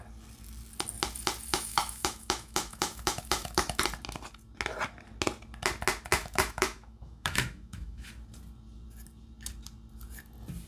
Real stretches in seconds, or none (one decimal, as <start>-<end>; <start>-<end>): 0.0-1.5; 3.8-6.1; 8.1-10.7